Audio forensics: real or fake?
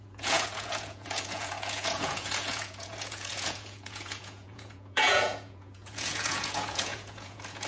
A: fake